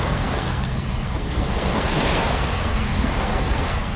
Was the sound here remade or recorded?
remade